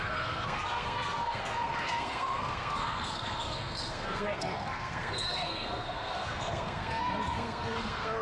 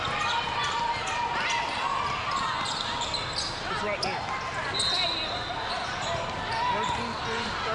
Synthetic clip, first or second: first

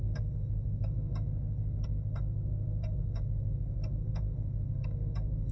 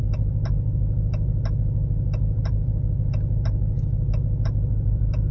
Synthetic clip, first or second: first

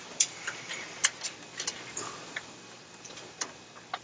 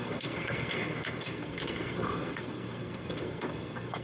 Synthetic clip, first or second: second